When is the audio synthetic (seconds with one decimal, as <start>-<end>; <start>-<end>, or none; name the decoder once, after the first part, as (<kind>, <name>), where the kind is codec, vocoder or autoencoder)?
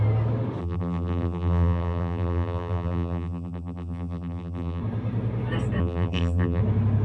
0.6-4.8 (vocoder, BigVGAN v2); 5.8-6.6